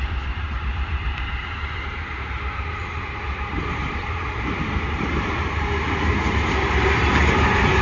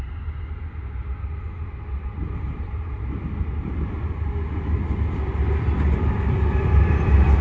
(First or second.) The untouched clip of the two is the second